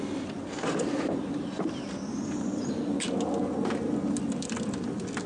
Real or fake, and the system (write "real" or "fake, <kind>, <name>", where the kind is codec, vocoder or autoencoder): real